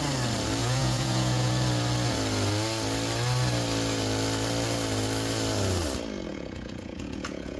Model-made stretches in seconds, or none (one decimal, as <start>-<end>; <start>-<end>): 0.6-1.5; 6.3-7.6